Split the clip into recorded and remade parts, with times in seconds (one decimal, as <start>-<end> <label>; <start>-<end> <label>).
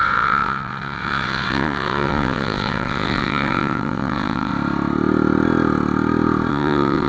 0.0-4.5 remade; 4.5-6.5 recorded; 6.5-7.1 remade